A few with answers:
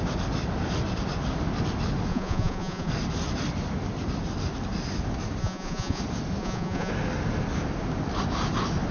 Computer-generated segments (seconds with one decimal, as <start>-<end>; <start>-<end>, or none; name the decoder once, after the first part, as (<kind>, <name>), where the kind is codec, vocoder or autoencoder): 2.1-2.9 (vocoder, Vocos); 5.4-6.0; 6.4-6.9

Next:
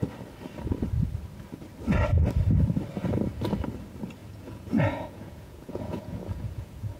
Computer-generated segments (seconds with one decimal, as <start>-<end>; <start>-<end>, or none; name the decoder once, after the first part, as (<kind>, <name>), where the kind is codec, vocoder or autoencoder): 4.2-7.0 (vocoder, Vocos)

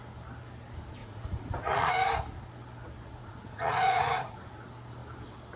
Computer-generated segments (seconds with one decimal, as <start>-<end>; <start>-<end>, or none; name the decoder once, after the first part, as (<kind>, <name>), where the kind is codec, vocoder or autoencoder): 1.0-1.9 (vocoder, Vocos); 3.2-4.4

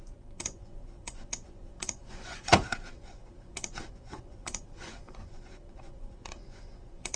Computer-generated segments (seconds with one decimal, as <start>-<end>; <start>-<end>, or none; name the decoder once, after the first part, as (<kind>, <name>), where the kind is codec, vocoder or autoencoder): 0.0-7.2 (vocoder, Vocos)